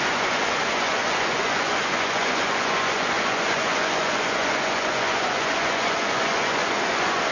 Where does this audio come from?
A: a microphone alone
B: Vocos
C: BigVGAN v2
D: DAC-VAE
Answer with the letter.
B